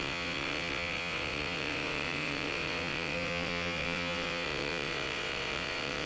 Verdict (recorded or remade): remade